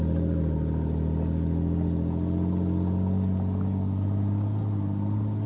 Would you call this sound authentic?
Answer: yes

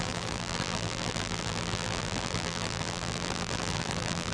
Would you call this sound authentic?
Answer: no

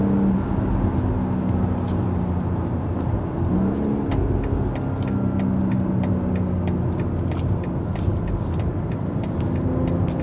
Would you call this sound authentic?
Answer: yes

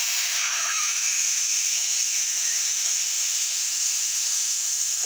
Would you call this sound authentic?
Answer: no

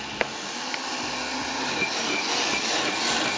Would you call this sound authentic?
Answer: yes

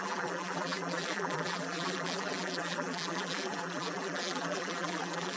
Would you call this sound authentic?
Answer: no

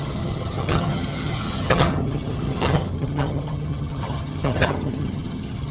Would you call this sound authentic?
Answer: no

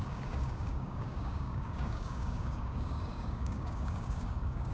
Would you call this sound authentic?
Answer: no